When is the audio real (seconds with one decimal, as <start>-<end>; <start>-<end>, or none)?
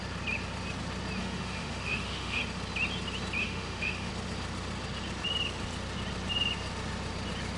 0.0-1.2; 2.4-3.4; 4.1-7.6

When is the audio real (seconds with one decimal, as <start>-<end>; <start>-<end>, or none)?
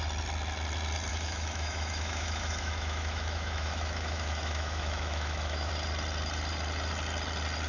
0.0-1.1; 5.7-7.7